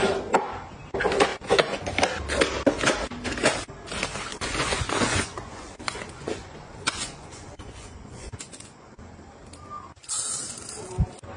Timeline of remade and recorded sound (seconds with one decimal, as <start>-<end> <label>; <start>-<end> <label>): 0.0-1.3 recorded; 1.3-1.9 remade; 1.9-4.3 recorded; 4.3-9.0 remade; 9.0-11.4 recorded